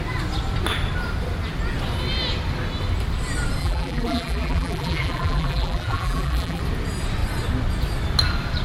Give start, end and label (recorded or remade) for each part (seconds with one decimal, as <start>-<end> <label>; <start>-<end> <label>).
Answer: 0.0-3.6 recorded; 3.6-6.6 remade; 6.6-8.6 recorded